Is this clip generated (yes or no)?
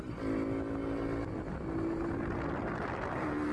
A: no